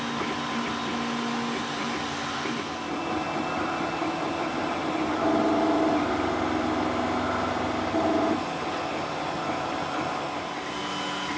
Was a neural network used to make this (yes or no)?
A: no